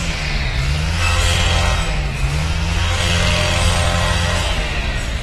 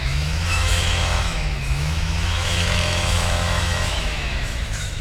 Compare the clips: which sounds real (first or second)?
first